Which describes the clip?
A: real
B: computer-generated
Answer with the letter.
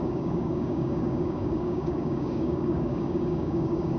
B